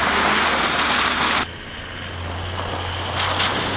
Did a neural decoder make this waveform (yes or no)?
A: no